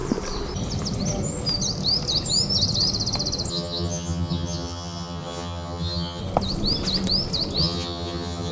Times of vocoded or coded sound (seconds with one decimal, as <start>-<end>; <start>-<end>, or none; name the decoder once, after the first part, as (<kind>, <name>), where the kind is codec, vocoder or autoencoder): 3.5-6.2 (vocoder, HiFi-GAN); 7.6-8.5